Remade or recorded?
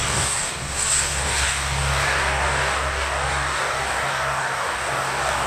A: remade